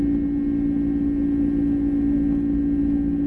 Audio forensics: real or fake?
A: real